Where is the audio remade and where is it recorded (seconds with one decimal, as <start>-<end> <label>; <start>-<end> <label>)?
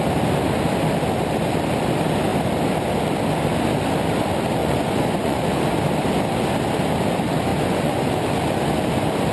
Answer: 0.0-4.6 recorded; 4.6-5.4 remade; 5.4-7.5 recorded; 7.5-8.1 remade; 8.1-9.3 recorded